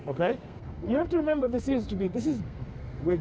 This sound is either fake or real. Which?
fake